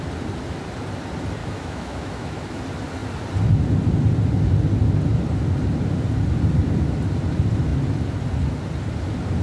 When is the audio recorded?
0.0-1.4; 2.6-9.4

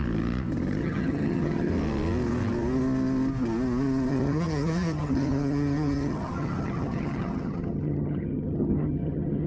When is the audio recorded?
0.0-0.8; 1.7-4.1